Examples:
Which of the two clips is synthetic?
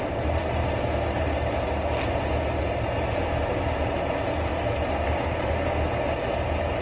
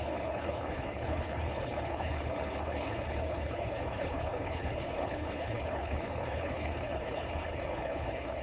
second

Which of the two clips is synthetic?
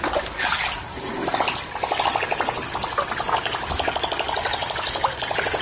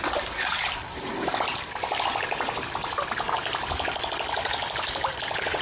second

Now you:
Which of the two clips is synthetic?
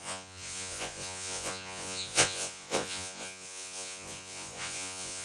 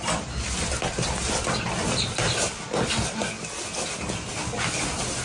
first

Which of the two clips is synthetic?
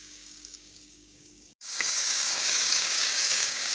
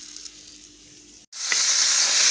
first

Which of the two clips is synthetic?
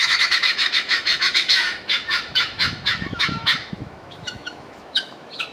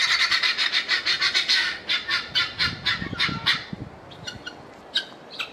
first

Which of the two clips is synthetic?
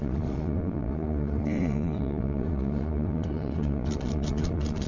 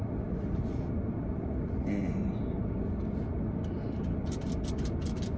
first